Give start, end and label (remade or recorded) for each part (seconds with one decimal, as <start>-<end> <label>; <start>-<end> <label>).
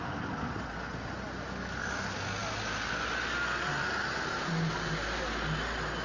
0.0-6.0 recorded